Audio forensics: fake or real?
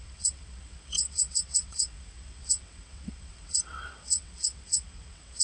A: fake